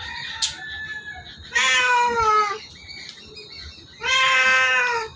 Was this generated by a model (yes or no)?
no